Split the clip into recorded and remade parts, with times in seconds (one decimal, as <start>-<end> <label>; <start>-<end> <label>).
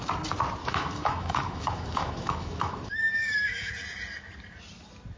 0.0-0.6 recorded; 0.6-3.7 remade; 3.7-5.2 recorded